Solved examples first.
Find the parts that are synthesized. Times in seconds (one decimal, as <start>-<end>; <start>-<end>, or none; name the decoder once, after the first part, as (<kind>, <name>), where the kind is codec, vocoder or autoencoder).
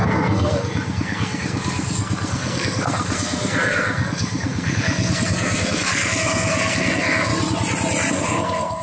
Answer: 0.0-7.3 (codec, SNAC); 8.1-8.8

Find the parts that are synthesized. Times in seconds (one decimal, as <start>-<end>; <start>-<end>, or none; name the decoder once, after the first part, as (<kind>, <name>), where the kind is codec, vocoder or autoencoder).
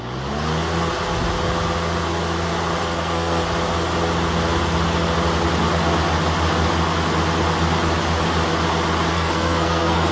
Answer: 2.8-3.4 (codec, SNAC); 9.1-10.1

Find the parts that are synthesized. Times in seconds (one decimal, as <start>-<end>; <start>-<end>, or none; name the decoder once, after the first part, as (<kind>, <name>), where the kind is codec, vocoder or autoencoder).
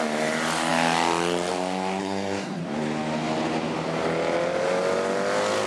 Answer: 2.0-2.6 (codec, SNAC)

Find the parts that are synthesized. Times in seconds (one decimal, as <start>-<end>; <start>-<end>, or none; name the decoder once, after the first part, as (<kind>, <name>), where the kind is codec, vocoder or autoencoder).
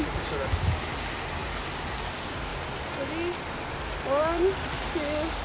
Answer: none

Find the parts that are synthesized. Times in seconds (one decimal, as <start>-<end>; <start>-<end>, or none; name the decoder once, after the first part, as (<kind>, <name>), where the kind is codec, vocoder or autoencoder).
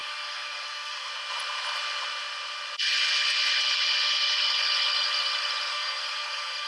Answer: 0.0-1.1 (codec, SNAC); 5.7-6.7